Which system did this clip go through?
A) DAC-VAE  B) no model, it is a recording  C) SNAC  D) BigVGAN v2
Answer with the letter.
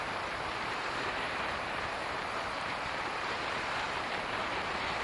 D